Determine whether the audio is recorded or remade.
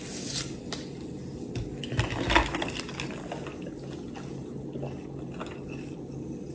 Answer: recorded